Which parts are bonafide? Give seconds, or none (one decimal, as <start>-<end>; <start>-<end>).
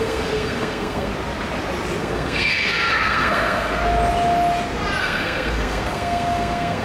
1.1-2.0; 3.8-5.0